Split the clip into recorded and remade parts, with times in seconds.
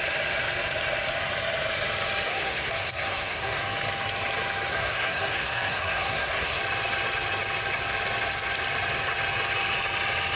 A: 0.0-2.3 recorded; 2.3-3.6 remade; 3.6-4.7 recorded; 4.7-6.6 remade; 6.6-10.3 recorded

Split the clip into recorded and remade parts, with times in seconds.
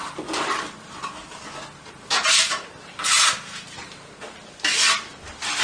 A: 0.0-5.6 recorded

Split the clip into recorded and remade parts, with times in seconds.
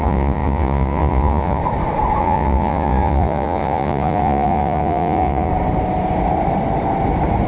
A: 0.0-1.6 remade; 1.6-2.2 recorded; 2.2-5.5 remade; 5.5-7.5 recorded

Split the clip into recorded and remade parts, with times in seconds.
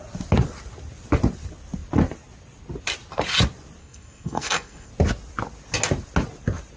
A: 0.0-3.8 recorded; 3.8-4.9 remade; 4.9-6.8 recorded